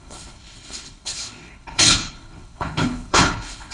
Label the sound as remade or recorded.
remade